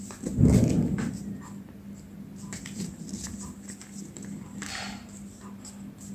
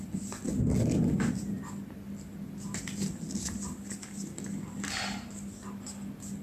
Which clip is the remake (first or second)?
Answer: first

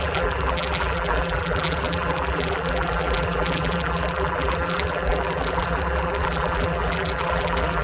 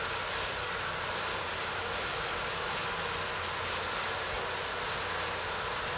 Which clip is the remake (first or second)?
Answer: first